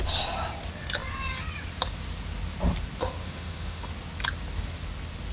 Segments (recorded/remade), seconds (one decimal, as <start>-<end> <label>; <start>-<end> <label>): 0.0-3.2 recorded; 3.2-3.9 remade; 3.9-5.3 recorded